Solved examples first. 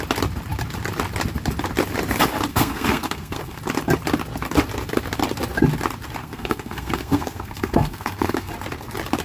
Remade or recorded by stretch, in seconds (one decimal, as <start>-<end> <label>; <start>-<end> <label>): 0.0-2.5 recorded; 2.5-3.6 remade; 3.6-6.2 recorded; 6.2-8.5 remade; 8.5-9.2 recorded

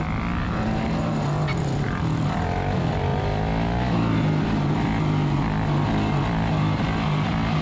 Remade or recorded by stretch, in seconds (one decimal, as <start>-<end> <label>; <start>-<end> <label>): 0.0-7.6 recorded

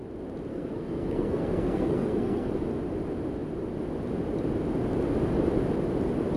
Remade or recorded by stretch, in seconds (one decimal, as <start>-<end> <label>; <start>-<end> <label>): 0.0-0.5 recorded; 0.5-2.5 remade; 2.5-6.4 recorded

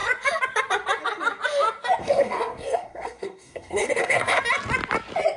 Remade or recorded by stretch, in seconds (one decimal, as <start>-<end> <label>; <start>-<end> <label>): 0.0-2.0 recorded; 2.0-4.4 remade; 4.4-5.4 recorded

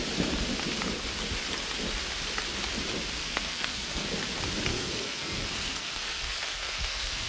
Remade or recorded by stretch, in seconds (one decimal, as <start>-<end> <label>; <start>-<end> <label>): 0.0-3.2 recorded; 3.2-4.1 remade; 4.1-4.7 recorded; 4.7-7.3 remade

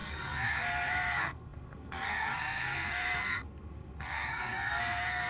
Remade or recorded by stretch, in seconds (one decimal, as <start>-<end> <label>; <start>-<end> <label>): 0.0-5.3 remade